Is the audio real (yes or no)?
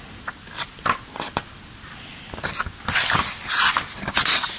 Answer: yes